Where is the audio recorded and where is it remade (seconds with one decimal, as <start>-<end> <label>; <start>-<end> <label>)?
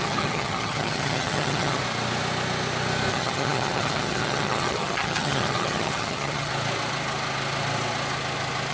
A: 0.0-1.8 remade; 1.8-3.1 recorded; 3.1-6.5 remade; 6.5-8.7 recorded